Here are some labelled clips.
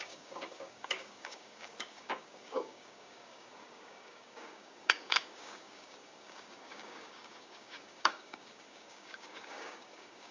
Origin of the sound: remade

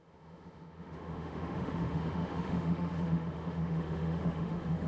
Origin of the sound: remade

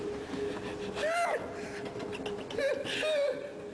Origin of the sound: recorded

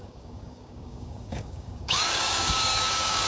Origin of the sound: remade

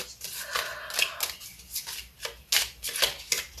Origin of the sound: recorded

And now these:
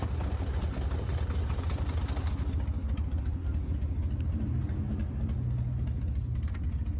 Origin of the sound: recorded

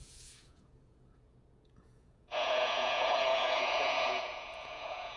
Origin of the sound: remade